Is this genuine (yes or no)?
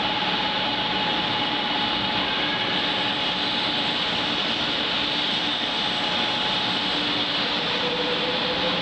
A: yes